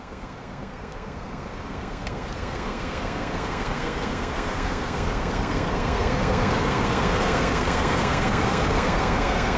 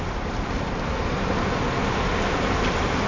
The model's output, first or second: first